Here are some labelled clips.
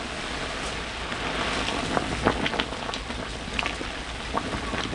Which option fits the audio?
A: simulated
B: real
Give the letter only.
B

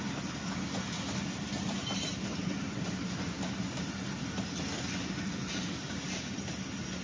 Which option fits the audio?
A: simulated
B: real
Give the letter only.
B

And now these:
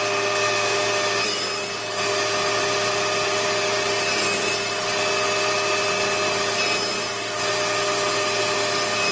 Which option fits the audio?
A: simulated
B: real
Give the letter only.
B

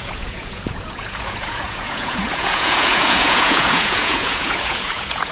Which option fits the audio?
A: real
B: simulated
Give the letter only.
B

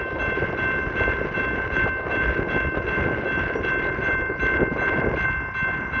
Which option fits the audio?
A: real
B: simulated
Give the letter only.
A